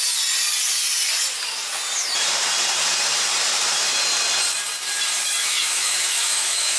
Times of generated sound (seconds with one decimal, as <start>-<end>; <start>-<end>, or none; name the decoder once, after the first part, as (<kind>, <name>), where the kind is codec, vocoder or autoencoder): 5.4-6.8 (autoencoder, DAC-VAE)